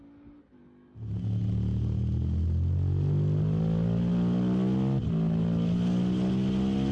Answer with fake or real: real